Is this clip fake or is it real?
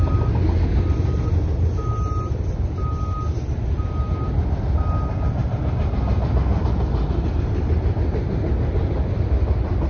real